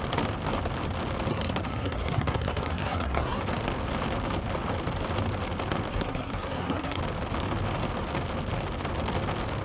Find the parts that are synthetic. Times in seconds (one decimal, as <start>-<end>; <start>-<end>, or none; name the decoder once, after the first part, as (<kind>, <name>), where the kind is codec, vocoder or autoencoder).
1.3-3.4 (codec, SNAC); 5.9-7.0